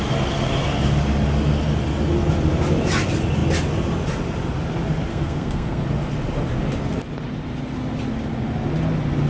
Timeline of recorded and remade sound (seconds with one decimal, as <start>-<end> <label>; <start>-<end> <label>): 0.0-5.1 recorded; 5.1-5.8 remade; 5.8-9.3 recorded